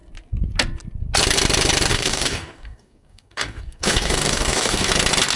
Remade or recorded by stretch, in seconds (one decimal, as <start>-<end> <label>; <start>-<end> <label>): 0.0-1.9 recorded; 1.9-4.9 remade; 4.9-5.4 recorded